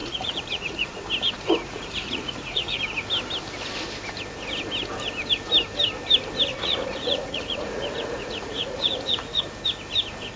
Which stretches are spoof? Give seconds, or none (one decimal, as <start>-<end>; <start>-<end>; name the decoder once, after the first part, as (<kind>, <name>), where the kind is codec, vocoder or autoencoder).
0.0-1.0 (vocoder, Vocos); 1.6-2.8; 6.5-9.4